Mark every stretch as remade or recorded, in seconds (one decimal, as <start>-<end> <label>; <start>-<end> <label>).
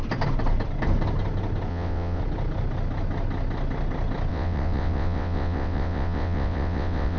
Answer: 0.0-1.7 recorded; 1.7-2.2 remade; 2.2-4.3 recorded; 4.3-7.2 remade